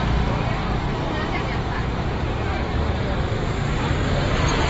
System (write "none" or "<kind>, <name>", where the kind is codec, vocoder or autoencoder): vocoder, BigVGAN v2